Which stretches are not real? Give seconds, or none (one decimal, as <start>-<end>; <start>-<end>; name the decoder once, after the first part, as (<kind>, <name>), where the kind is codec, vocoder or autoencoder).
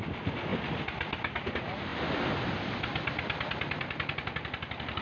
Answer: 0.5-1.5 (vocoder, BigVGAN v2)